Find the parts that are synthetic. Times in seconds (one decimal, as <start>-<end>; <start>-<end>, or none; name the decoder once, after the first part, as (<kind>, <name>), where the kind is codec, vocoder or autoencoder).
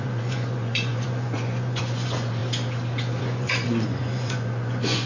0.0-2.4 (vocoder, Vocos); 3.2-5.1